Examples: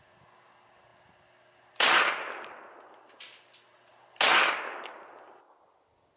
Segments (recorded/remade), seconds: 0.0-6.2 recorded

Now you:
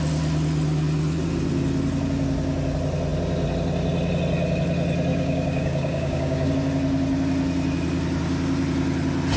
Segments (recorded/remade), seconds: 0.0-5.1 recorded; 5.1-6.5 remade; 6.5-9.4 recorded

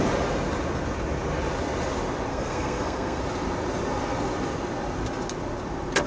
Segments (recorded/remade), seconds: 0.0-2.3 recorded; 2.3-3.2 remade; 3.2-6.1 recorded

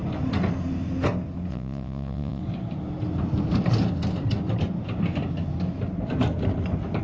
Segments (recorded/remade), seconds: 0.0-1.5 recorded; 1.5-2.4 remade; 2.4-7.0 recorded

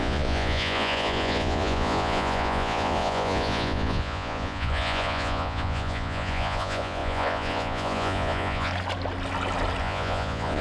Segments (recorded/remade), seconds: 0.0-8.7 remade; 8.7-9.8 recorded; 9.8-10.6 remade

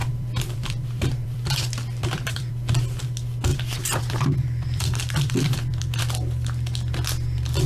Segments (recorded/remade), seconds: 0.0-2.5 remade; 2.5-3.5 recorded; 3.5-6.0 remade; 6.0-7.7 recorded

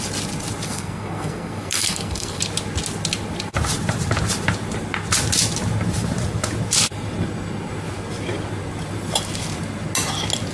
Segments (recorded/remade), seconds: 0.0-0.6 recorded; 0.6-2.4 remade; 2.4-10.5 recorded